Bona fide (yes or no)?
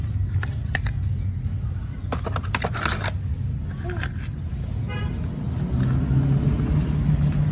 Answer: yes